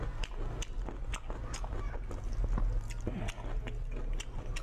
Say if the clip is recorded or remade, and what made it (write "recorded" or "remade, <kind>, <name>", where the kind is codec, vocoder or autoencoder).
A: recorded